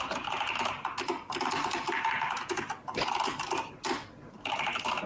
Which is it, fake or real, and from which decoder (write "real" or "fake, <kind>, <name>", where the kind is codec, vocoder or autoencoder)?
real